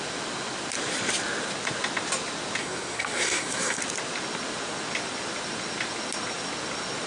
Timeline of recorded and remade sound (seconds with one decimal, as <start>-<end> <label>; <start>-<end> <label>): 0.0-2.6 recorded; 2.6-3.8 remade; 3.8-7.1 recorded